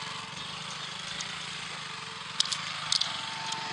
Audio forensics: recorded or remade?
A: recorded